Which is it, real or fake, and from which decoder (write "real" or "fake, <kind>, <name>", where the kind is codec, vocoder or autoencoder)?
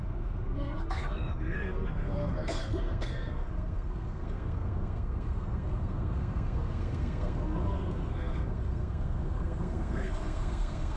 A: fake, codec, SNAC